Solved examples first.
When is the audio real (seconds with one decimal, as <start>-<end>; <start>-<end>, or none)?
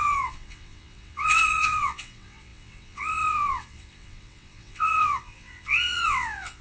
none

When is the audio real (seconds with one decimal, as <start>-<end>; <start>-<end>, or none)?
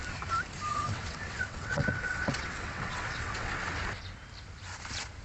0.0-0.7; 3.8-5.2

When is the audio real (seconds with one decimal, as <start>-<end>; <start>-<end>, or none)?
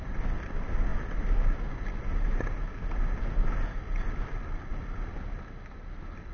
0.0-6.3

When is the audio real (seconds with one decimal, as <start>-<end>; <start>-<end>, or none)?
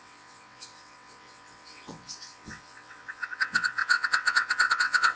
none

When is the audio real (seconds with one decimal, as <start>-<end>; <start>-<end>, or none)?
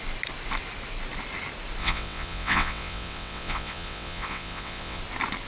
0.0-1.8; 5.0-5.5